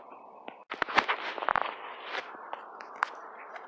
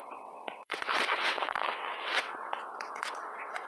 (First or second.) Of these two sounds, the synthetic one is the second